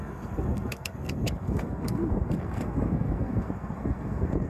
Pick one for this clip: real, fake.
fake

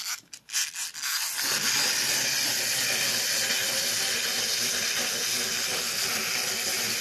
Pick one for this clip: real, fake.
real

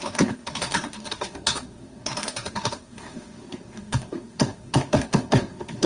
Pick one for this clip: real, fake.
fake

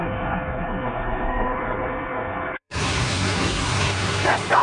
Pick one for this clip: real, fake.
fake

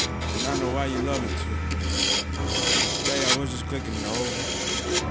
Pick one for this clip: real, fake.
real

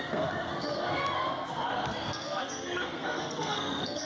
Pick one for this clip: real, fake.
fake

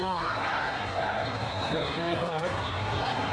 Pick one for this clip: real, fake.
fake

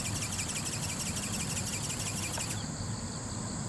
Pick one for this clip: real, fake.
real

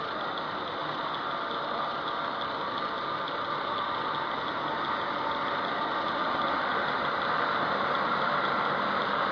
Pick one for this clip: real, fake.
real